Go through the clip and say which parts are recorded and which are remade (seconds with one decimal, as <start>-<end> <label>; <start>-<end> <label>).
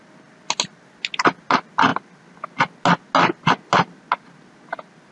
0.0-5.1 recorded